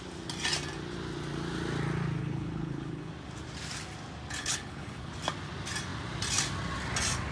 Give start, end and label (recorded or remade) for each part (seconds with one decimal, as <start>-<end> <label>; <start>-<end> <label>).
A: 0.0-2.2 recorded; 2.2-3.1 remade; 3.1-4.4 recorded; 4.4-5.1 remade; 5.1-7.3 recorded